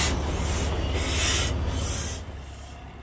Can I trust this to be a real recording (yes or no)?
yes